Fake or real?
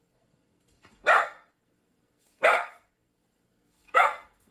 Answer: fake